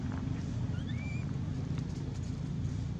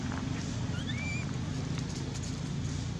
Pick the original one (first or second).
second